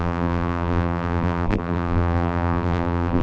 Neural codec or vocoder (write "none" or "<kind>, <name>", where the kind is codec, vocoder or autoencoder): vocoder, BigVGAN v2